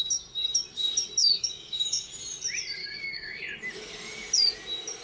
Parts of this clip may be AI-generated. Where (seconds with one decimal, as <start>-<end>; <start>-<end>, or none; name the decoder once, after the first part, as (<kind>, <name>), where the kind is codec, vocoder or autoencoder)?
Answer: 1.2-2.1 (codec, DAC); 2.8-3.4